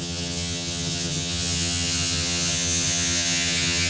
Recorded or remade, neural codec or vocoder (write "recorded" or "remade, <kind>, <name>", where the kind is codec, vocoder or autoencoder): remade, vocoder, HiFi-GAN